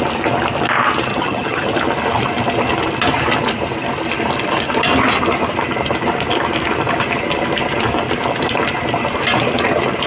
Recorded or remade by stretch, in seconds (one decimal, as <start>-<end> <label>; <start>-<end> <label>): 0.0-1.1 recorded; 1.1-1.6 remade; 1.6-10.1 recorded